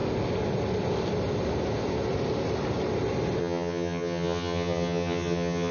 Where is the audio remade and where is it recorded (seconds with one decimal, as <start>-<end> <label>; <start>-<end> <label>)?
0.0-3.4 recorded; 3.4-5.7 remade